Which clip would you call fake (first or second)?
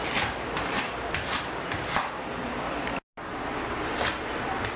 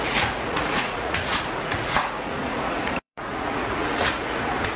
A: second